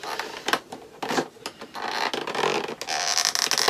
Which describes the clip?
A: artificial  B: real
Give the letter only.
B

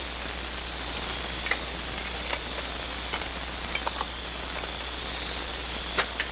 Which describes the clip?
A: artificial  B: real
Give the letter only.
B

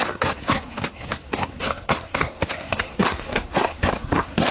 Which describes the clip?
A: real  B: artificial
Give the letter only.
B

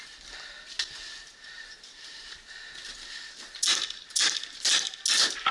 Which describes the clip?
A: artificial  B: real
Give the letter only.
B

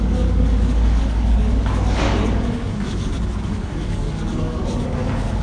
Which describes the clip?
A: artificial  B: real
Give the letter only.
A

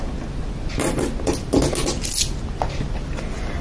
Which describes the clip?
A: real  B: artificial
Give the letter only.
A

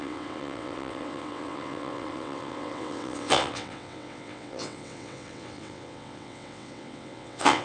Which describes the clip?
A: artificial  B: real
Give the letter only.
A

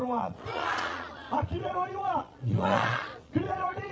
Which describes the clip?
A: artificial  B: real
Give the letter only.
A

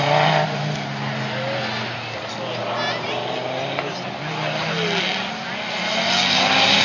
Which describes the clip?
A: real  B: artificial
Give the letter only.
A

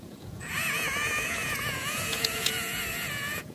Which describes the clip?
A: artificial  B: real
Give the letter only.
A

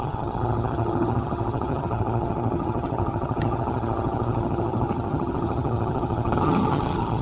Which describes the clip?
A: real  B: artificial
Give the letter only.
B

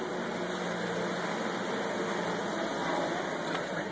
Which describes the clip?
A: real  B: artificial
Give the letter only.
A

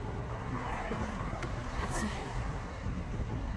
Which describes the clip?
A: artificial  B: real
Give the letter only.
A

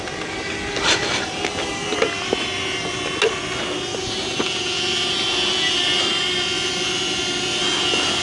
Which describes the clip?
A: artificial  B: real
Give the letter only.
B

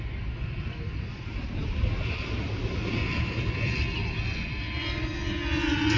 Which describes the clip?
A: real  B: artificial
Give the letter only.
A